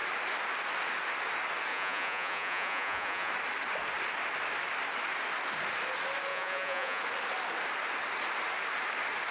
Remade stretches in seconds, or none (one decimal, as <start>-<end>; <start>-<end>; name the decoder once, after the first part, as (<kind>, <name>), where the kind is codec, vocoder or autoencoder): 1.7-3.3 (vocoder, Vocos); 6.3-7.0